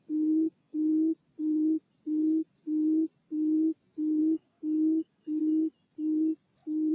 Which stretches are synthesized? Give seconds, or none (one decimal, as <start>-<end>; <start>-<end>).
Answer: 0.0-0.9; 4.2-5.4